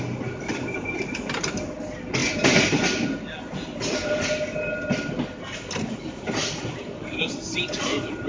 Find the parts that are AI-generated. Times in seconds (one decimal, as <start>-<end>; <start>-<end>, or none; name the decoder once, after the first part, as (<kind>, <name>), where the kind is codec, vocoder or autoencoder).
none